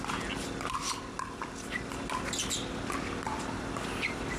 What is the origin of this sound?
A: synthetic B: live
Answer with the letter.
B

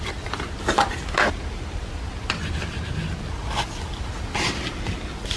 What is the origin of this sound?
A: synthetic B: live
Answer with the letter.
B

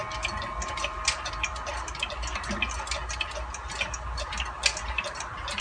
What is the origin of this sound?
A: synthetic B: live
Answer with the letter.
B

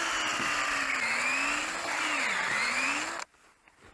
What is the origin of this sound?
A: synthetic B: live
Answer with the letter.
B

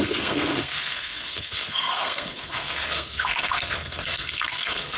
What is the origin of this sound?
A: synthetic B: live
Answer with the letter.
A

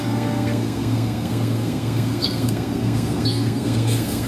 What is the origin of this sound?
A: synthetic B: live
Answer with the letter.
A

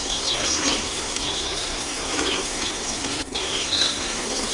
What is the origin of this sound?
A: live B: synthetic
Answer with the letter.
B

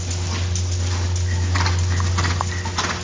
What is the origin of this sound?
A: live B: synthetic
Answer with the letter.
A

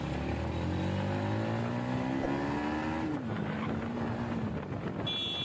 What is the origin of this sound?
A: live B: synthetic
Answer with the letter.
A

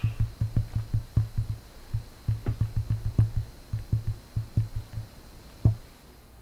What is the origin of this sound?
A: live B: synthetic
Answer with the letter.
A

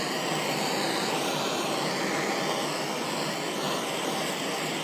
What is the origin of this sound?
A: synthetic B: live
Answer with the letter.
B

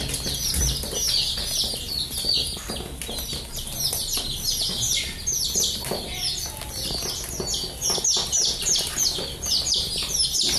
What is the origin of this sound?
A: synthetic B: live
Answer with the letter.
B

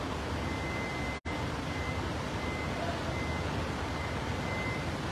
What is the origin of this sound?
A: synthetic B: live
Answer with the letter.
B